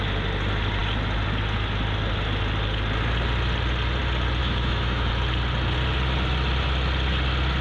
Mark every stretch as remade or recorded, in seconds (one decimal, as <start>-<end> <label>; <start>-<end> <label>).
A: 0.0-4.4 recorded; 4.4-5.1 remade; 5.1-7.6 recorded